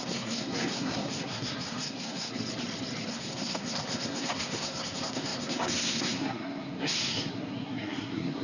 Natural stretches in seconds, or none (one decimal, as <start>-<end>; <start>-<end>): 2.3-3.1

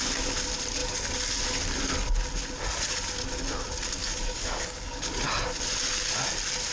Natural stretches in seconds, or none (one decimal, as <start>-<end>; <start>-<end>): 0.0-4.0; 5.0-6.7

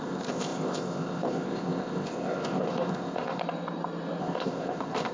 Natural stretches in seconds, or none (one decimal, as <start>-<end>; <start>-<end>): 3.4-4.2